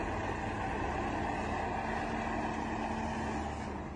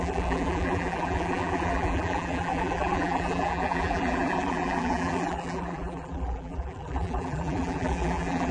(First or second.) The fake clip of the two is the second